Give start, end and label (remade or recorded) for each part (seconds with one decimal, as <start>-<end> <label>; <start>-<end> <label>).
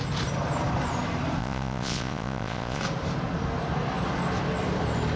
0.0-1.4 recorded; 1.4-2.8 remade; 2.8-5.2 recorded